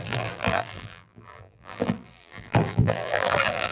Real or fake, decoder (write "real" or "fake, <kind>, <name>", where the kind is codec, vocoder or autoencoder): fake, vocoder, BigVGAN v2